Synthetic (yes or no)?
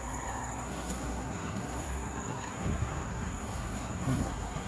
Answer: yes